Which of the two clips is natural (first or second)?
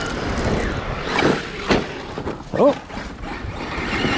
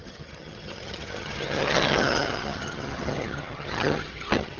first